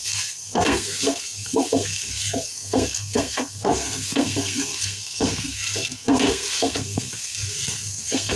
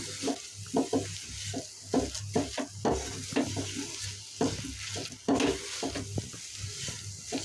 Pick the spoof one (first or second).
first